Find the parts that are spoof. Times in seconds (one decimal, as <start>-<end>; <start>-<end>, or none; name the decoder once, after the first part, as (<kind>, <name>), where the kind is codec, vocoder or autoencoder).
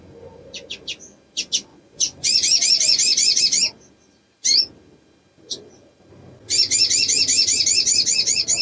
1.7-3.4 (vocoder, Vocos)